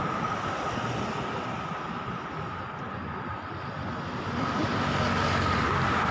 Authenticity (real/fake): real